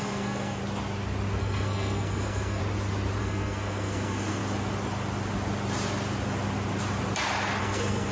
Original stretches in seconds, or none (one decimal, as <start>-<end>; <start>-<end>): 0.6-1.4; 2.6-3.2; 4.4-7.6